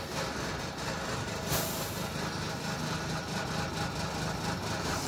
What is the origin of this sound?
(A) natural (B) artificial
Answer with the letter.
A